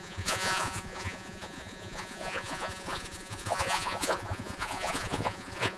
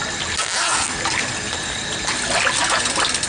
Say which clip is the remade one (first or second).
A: first